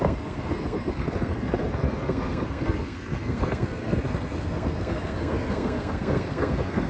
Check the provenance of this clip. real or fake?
fake